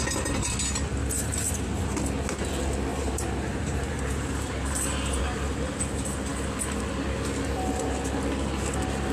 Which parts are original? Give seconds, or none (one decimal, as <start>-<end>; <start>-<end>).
0.0-1.0; 1.8-2.9; 5.2-9.1

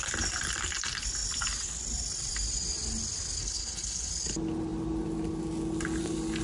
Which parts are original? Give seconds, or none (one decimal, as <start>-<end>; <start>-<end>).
0.0-3.4; 4.1-6.4

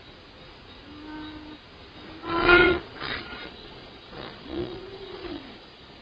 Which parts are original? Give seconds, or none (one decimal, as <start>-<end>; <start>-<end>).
0.0-2.2